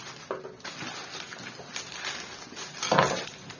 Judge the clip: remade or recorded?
recorded